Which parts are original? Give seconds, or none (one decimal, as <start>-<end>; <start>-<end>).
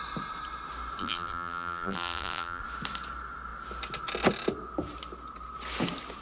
0.0-1.0; 2.6-6.2